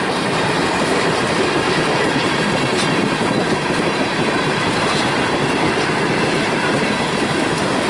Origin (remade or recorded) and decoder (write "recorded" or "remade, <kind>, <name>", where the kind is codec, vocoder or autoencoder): remade, vocoder, BigVGAN v2